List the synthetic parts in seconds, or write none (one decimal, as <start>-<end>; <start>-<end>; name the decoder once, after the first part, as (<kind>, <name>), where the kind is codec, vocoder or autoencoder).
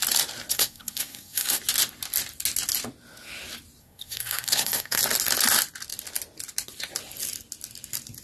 0.5-1.6 (codec, SNAC); 3.8-5.0